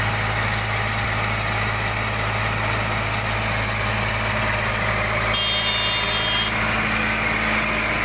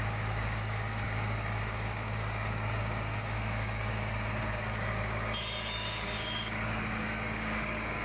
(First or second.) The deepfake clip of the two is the second